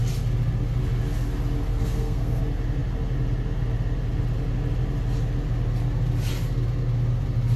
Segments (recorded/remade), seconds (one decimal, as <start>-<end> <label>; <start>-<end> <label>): 0.0-1.7 recorded; 1.7-2.4 remade; 2.4-7.6 recorded